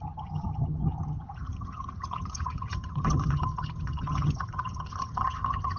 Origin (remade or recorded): remade